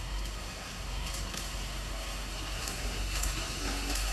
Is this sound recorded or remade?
remade